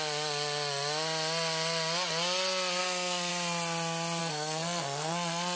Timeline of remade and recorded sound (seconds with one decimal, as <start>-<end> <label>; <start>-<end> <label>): 0.0-2.8 recorded; 2.8-3.3 remade; 3.3-4.2 recorded; 4.2-5.6 remade